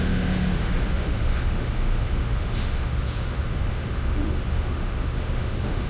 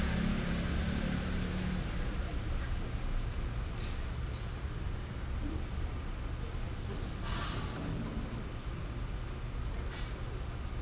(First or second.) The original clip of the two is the second